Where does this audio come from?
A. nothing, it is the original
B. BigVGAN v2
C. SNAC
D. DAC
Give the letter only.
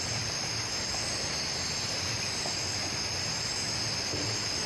A